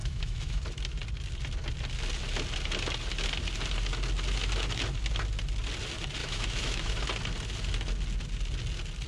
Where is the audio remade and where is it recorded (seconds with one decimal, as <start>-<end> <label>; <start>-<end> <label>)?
0.0-0.6 remade; 0.6-6.2 recorded; 6.2-7.0 remade; 7.0-9.1 recorded